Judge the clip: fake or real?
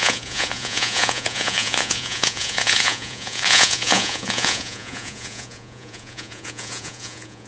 fake